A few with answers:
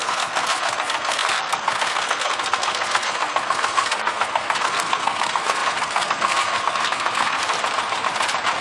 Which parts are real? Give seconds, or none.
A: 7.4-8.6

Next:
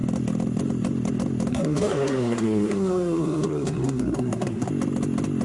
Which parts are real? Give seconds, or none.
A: 0.0-1.5; 4.7-5.4

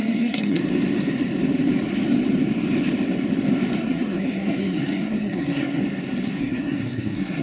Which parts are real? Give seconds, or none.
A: 0.6-3.8; 5.8-6.4

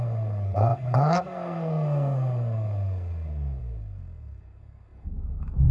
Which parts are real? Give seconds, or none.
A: none

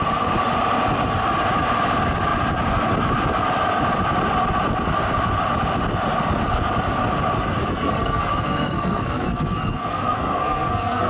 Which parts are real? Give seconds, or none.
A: 0.0-7.7

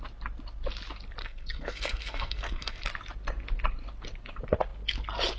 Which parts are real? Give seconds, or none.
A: 0.0-1.2; 2.8-5.4

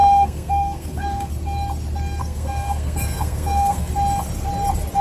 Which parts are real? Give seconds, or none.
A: 1.3-2.2; 3.9-5.0

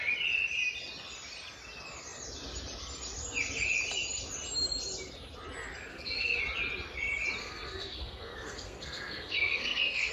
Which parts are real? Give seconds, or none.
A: 0.0-5.9; 6.4-7.4